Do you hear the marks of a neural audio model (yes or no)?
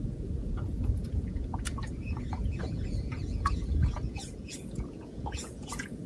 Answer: yes